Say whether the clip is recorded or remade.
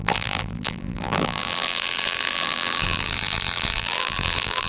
remade